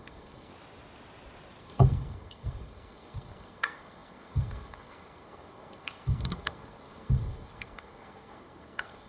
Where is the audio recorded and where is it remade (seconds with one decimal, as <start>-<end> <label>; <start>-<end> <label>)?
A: 0.0-0.5 remade; 0.5-1.6 recorded; 1.6-9.1 remade